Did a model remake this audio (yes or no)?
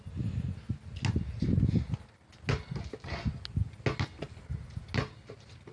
no